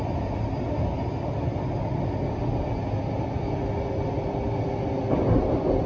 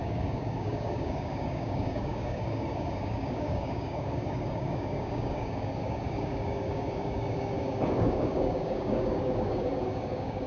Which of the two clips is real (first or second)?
first